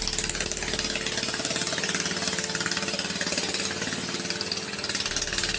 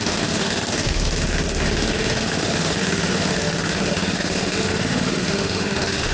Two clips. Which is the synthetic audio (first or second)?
second